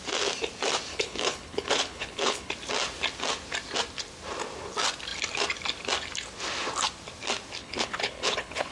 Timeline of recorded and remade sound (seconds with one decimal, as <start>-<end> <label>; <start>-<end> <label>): 0.0-0.9 recorded; 0.9-2.5 remade; 2.5-7.6 recorded; 7.6-8.7 remade